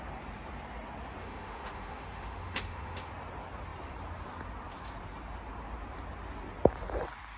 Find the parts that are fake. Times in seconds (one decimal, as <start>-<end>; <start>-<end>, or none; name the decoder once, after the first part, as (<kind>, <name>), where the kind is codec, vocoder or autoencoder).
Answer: 1.2-3.1 (autoencoder, DAC-VAE)